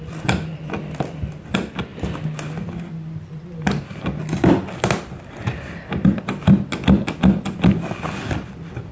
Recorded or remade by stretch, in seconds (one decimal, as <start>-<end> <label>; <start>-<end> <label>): 0.0-8.9 recorded